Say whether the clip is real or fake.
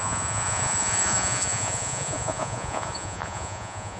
fake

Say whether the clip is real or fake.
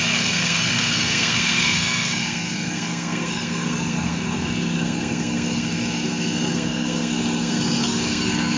fake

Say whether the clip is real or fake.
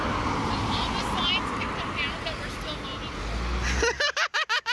real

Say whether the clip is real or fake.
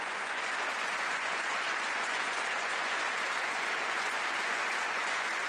fake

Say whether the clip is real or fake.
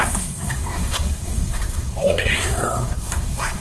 fake